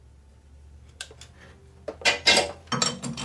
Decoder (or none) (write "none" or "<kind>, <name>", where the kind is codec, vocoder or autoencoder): none